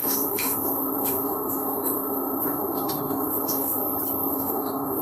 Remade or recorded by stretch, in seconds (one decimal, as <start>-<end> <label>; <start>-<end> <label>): 0.0-3.8 remade; 3.8-4.3 recorded; 4.3-5.0 remade